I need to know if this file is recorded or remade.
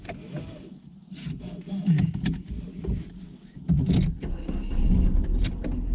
recorded